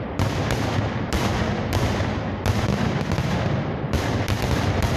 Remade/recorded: recorded